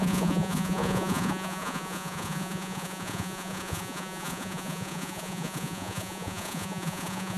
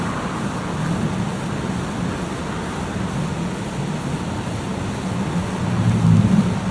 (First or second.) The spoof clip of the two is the first